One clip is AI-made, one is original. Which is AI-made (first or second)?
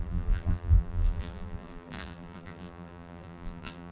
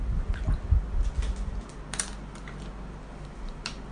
first